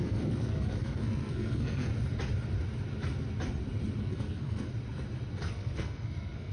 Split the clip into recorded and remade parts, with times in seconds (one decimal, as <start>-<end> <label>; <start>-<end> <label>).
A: 0.0-1.9 remade; 1.9-4.0 recorded; 4.0-4.7 remade; 4.7-5.4 recorded; 5.4-6.5 remade